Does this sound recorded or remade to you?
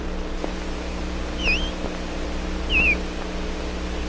recorded